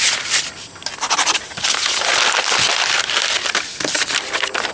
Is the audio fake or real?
real